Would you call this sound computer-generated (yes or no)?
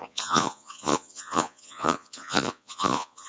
yes